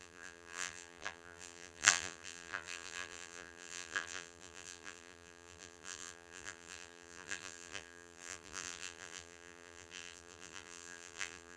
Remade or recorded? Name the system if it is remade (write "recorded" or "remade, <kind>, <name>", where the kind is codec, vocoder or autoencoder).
remade, vocoder, BigVGAN v2